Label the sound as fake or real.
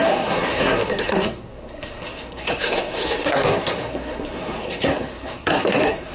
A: fake